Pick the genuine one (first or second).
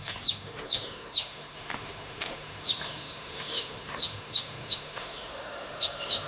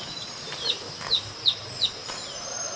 second